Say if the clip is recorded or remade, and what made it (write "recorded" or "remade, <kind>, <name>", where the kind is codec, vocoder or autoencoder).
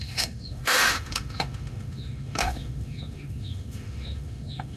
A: remade, autoencoder, DAC-VAE